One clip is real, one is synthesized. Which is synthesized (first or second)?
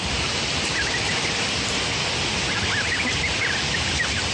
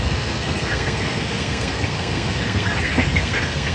second